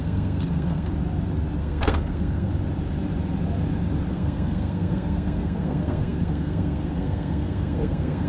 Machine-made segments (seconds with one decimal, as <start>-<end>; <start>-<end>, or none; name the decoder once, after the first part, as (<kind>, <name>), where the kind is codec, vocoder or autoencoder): 0.0-0.9 (codec, SNAC); 1.6-2.5; 4.1-8.3